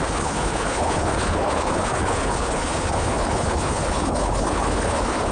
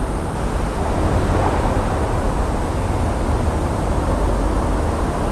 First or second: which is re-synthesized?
first